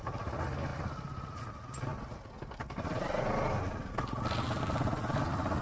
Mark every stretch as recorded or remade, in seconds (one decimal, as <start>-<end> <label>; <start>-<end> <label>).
0.0-0.7 recorded; 0.7-1.4 remade; 1.4-5.6 recorded